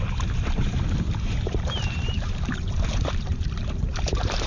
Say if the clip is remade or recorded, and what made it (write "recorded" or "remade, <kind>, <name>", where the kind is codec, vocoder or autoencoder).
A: remade, vocoder, BigVGAN v2